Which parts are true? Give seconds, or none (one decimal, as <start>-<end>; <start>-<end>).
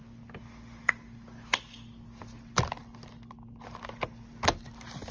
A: 0.0-5.1